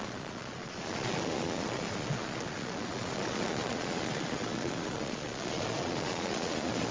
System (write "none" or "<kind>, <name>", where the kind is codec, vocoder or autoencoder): vocoder, Vocos